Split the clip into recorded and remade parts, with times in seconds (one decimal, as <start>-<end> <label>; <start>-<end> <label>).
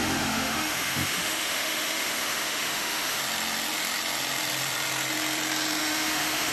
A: 0.0-3.2 remade; 3.2-5.8 recorded; 5.8-6.5 remade